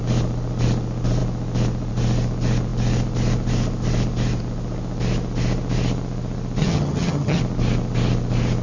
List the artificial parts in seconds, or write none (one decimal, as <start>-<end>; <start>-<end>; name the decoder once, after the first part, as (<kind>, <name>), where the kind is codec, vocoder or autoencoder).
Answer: 6.6-7.4 (vocoder, HiFi-GAN)